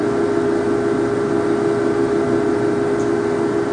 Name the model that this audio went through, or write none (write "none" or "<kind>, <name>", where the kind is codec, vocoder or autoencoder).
none